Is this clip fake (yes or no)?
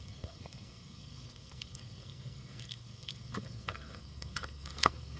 yes